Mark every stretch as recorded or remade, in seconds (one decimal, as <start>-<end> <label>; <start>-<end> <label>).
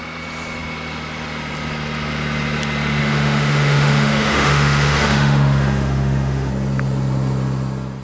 0.0-3.0 recorded; 3.0-6.5 remade; 6.5-8.0 recorded